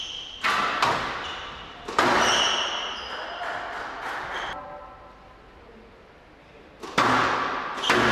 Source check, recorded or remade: recorded